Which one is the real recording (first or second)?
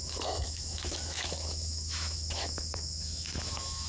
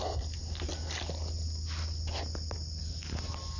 second